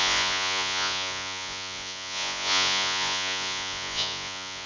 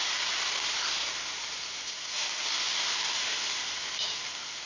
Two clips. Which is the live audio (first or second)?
second